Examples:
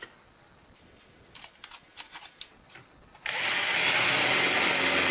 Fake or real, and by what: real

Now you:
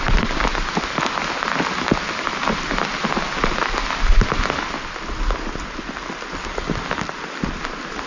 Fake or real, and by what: real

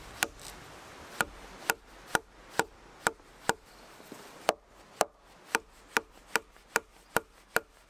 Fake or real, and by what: real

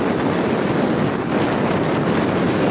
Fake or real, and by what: real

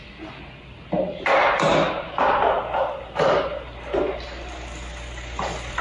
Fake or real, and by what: real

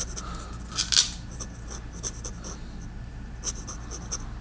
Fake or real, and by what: real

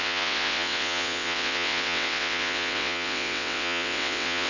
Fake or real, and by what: fake, vocoder, WaveNeXt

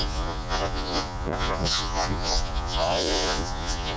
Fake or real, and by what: fake, vocoder, Vocos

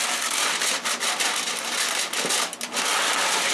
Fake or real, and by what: real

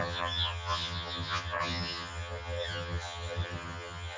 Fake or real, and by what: fake, vocoder, HiFi-GAN